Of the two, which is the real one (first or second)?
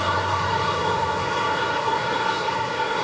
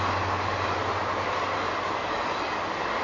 second